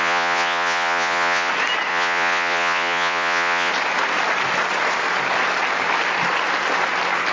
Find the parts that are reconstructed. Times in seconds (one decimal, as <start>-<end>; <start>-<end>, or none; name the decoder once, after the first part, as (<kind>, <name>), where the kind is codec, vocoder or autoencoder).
0.0-1.5 (vocoder, Vocos); 1.9-3.7